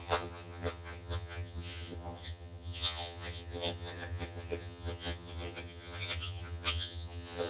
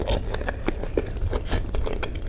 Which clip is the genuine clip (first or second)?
second